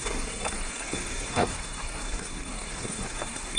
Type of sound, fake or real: fake